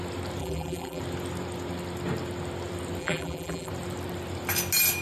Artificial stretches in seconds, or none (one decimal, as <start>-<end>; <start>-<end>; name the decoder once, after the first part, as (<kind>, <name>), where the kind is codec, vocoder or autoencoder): 0.4-1.0 (vocoder, BigVGAN v2); 3.0-3.7